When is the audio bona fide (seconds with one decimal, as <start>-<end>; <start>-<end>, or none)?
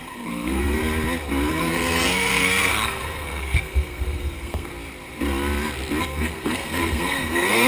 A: 0.8-1.5; 4.7-6.0